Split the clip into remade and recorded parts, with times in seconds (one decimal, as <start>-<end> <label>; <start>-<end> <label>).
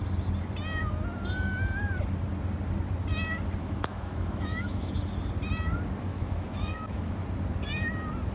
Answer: 0.0-3.6 recorded; 3.6-5.0 remade; 5.0-6.1 recorded; 6.1-7.1 remade; 7.1-8.3 recorded